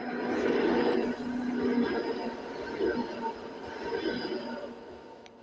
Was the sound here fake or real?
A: real